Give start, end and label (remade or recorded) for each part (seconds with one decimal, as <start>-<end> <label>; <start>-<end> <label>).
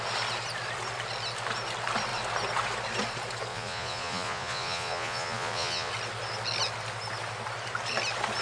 0.0-3.5 recorded; 3.5-5.9 remade; 5.9-8.4 recorded